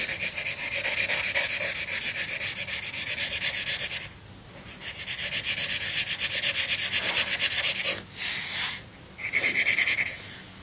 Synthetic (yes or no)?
no